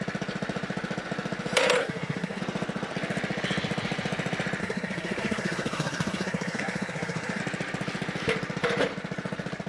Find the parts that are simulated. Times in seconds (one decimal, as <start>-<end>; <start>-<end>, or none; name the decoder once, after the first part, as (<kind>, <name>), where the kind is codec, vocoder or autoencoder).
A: 1.8-2.4 (codec, SNAC); 4.6-7.4